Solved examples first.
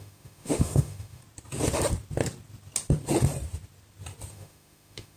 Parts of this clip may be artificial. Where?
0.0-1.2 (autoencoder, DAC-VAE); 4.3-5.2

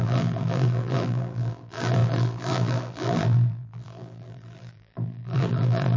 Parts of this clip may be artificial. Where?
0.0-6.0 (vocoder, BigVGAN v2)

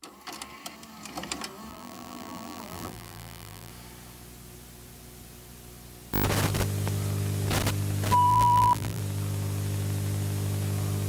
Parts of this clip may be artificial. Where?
1.7-3.7 (vocoder, BigVGAN v2); 8.3-9.0

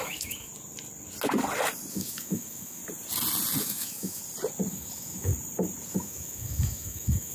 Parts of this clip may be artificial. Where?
0.0-0.5 (autoencoder, DAC-VAE); 1.9-2.8; 3.6-4.2; 4.7-5.3; 5.9-7.3

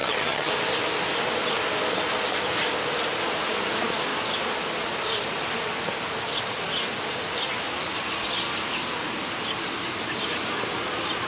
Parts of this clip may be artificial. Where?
0.0-0.5 (vocoder, HiFi-GAN)

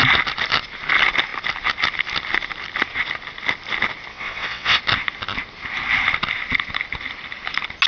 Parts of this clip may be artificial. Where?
4.1-4.8 (vocoder, WaveNeXt)